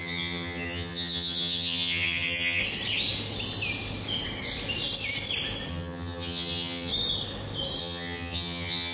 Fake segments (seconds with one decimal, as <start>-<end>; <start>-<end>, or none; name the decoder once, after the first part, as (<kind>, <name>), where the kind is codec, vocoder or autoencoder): 0.0-2.6 (vocoder, HiFi-GAN); 5.7-6.9; 7.8-8.9